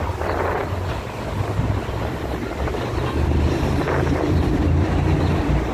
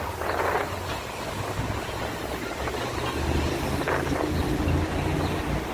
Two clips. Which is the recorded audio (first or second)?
second